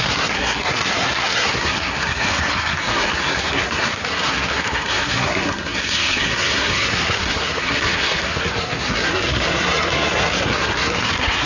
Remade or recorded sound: remade